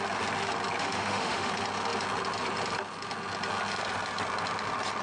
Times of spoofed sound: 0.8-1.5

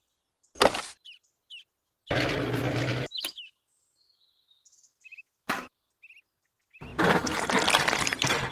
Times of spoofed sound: 2.9-5.7

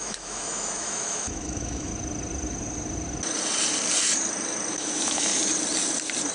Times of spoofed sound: 0.0-1.9; 4.7-5.3

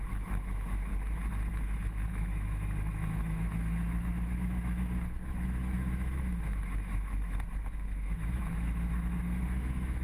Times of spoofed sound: 0.0-0.9; 1.5-10.0